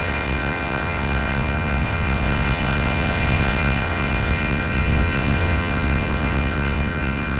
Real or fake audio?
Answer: fake